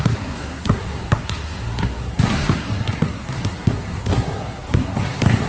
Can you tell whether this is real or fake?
fake